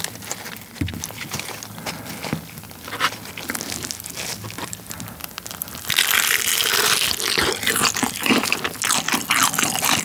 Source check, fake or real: real